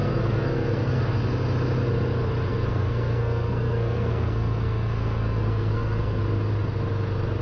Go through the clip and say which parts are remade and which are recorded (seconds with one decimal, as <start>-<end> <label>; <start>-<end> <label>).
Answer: 0.0-1.0 remade; 1.0-2.5 recorded; 2.5-6.2 remade; 6.2-7.4 recorded

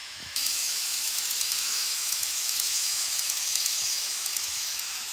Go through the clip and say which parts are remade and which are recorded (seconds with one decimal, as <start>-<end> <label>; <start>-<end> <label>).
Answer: 0.0-5.1 remade

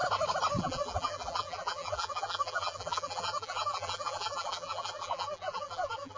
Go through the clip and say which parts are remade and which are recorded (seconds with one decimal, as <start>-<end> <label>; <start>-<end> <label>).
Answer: 0.0-0.6 recorded; 0.6-6.2 remade

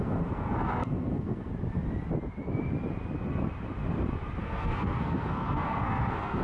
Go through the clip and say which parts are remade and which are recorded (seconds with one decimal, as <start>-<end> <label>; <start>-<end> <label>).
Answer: 0.0-1.5 remade; 1.5-4.4 recorded; 4.4-6.4 remade

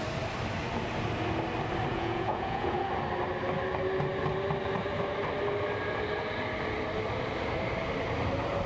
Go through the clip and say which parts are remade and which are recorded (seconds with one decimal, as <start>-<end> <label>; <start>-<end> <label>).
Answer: 0.0-1.9 recorded; 1.9-2.9 remade; 2.9-8.7 recorded